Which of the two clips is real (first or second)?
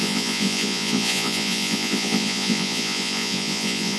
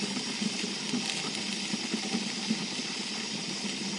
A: second